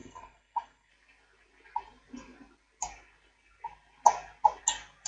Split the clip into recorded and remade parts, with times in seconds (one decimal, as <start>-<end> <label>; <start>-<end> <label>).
0.0-0.9 remade; 0.9-5.1 recorded